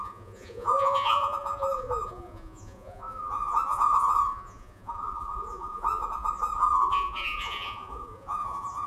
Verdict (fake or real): fake